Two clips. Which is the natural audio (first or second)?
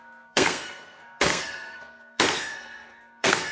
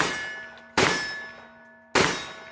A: second